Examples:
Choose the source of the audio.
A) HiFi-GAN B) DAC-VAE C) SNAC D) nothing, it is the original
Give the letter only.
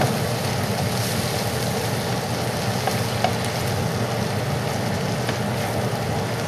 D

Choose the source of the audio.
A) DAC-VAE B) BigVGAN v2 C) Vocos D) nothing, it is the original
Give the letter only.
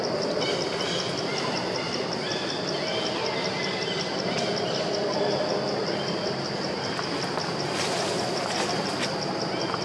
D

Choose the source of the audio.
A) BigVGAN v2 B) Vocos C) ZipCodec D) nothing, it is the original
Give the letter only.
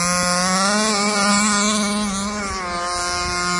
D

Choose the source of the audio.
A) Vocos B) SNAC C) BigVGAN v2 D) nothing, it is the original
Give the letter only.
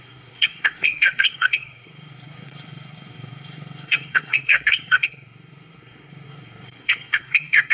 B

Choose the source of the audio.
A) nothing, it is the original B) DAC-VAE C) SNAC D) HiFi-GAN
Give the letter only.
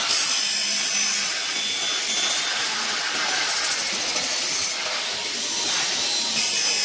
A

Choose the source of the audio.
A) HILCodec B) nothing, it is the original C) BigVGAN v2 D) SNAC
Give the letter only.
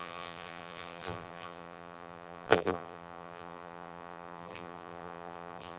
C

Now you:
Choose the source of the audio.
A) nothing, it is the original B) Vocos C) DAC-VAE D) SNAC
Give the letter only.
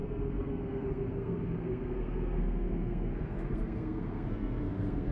D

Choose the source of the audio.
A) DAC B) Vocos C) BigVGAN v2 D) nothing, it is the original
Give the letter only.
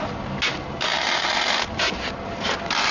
D